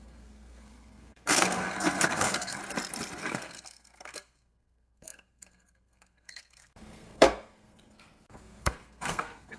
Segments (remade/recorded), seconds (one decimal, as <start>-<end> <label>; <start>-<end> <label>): 0.0-2.6 remade; 2.6-3.2 recorded; 3.2-9.6 remade